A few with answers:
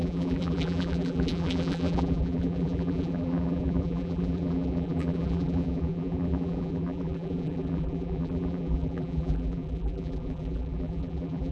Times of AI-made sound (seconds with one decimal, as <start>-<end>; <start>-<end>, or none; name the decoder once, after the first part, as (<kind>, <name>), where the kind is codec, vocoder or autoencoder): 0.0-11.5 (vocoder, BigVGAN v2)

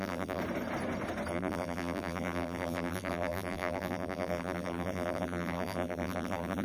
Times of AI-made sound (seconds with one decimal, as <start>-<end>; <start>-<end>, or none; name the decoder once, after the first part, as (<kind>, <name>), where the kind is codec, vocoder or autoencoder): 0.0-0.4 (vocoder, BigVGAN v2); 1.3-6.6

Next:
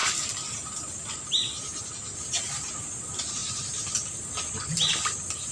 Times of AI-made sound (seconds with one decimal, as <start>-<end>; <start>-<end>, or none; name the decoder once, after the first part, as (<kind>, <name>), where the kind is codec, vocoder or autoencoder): none

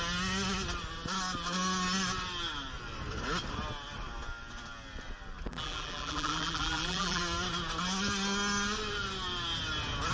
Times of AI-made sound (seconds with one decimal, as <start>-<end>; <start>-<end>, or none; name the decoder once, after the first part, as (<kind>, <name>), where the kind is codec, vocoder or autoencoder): 5.5-7.2 (vocoder, BigVGAN v2)